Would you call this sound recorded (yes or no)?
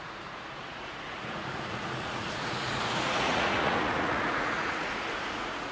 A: no